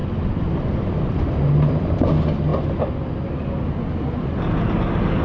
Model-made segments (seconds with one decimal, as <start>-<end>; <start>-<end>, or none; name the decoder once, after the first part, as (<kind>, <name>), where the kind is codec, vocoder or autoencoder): 0.0-2.0 (vocoder, BigVGAN v2)